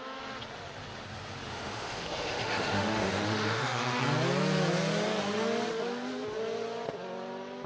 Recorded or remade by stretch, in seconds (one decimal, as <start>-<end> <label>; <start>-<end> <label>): 0.0-1.5 recorded; 1.5-4.0 remade; 4.0-7.7 recorded